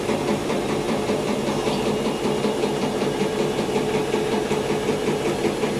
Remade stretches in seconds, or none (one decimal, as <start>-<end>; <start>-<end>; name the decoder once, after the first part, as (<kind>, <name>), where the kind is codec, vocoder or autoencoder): 0.4-3.7 (vocoder, BigVGAN v2)